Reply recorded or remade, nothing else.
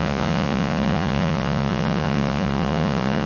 remade